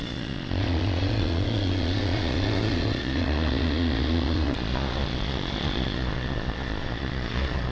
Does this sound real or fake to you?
fake